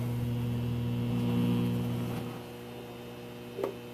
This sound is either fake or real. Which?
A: fake